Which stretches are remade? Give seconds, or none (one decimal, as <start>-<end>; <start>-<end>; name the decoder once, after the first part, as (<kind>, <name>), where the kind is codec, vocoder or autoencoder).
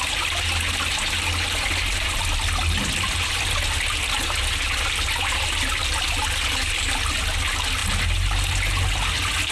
none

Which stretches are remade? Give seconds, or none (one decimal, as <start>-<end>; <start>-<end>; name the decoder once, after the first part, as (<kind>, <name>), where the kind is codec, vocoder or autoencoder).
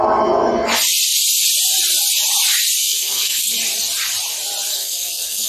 2.8-3.5 (codec, SNAC); 4.7-5.5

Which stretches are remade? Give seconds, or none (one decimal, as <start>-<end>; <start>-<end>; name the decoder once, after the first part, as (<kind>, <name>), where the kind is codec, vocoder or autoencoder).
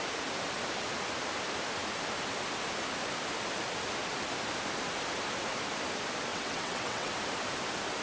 6.3-7.1 (vocoder, WaveNeXt)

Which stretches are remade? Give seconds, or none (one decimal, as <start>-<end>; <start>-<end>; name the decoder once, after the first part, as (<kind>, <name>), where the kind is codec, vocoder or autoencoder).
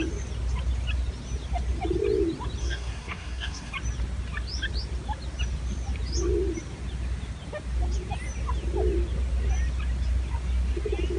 2.6-3.7 (codec, SNAC)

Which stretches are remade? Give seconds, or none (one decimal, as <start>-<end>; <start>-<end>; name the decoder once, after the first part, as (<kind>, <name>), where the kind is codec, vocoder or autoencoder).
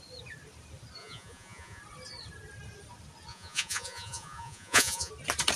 1.0-1.8 (vocoder, Vocos); 3.3-5.1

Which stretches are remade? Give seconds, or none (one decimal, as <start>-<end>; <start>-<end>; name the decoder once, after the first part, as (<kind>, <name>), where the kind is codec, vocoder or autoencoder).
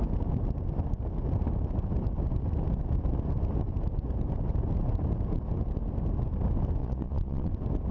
6.8-7.5 (vocoder, Vocos)